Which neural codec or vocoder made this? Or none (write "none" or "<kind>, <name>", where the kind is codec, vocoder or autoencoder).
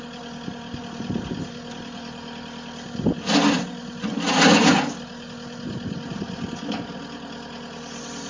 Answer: none